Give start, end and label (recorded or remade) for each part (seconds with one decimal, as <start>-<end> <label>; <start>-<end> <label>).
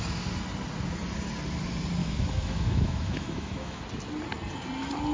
0.0-2.0 recorded; 2.0-3.8 remade; 3.8-5.1 recorded